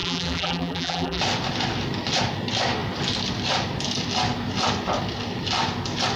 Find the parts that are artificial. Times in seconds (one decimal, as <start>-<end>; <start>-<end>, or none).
0.0-1.2